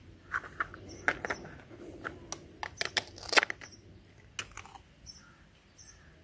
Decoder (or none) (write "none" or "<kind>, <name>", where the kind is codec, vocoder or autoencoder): none